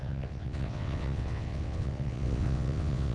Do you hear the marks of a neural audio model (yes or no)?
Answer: yes